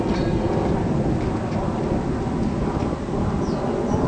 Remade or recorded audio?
recorded